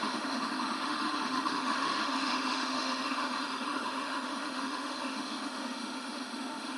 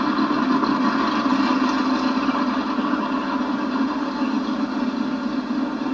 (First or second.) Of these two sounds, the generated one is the first